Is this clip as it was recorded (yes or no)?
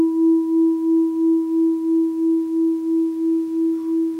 yes